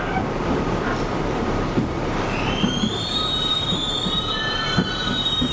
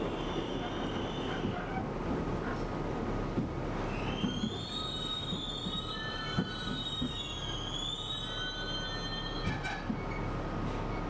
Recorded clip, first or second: second